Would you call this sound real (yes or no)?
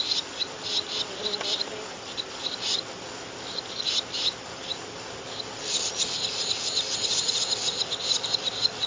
yes